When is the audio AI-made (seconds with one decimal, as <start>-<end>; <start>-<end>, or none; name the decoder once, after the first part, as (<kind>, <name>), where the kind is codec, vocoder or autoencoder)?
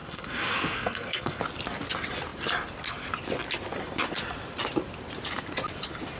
0.0-1.4 (codec, SNAC)